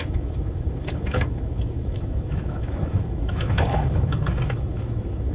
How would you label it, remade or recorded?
remade